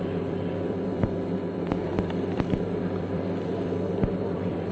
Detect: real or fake fake